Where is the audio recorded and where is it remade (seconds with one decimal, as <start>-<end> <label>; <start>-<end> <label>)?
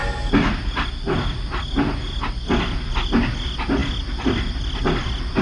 0.0-5.4 recorded